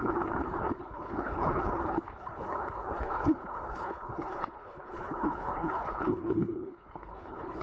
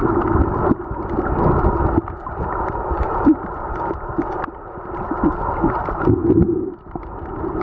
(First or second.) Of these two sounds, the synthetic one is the first